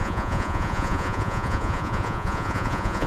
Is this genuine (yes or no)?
no